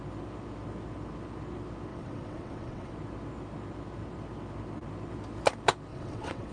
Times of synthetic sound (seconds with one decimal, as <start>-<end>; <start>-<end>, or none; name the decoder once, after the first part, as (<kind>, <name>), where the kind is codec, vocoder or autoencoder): 1.9-2.9 (vocoder, WaveNeXt); 5.9-6.5

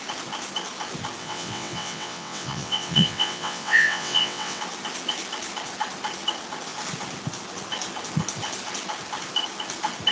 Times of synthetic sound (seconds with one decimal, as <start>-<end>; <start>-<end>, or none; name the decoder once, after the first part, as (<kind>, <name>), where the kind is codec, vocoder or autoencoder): 1.2-4.6 (vocoder, WaveNeXt)

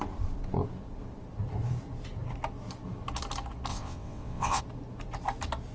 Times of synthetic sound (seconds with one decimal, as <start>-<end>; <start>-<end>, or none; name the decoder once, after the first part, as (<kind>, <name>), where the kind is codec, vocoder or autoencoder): 3.7-4.6 (vocoder, WaveNeXt)

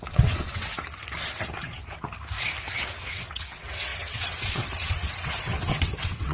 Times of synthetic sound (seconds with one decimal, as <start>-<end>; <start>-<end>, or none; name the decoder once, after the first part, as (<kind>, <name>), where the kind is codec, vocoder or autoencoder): 0.0-0.7 (vocoder, WaveNeXt); 2.7-6.3

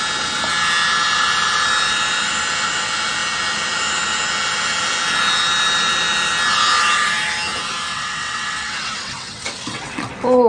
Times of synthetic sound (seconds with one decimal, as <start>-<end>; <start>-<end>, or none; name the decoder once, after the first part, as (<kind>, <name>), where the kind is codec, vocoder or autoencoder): 7.9-10.1 (vocoder, WaveNeXt)